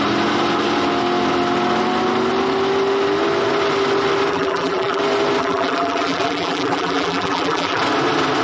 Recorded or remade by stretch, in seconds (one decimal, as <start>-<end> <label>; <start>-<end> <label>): 0.0-4.3 recorded; 4.3-5.0 remade; 5.0-5.4 recorded; 5.4-7.8 remade; 7.8-8.4 recorded